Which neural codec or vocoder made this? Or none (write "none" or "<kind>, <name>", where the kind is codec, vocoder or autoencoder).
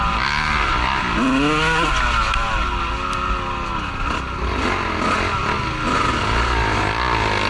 none